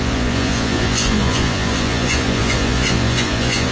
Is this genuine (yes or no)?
no